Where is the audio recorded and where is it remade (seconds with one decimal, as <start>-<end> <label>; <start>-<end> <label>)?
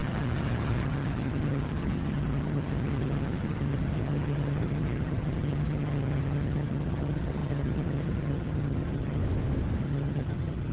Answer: 0.0-9.2 remade; 9.2-9.8 recorded; 9.8-10.7 remade